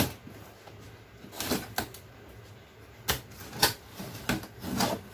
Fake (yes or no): no